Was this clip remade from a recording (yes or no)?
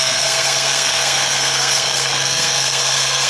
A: yes